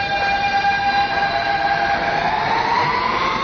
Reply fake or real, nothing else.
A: real